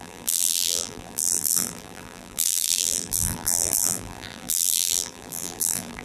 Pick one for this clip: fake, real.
fake